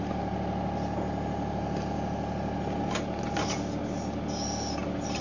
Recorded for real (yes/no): yes